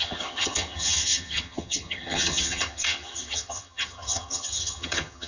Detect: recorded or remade remade